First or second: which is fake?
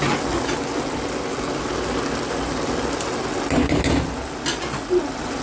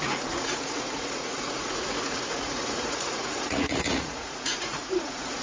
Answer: second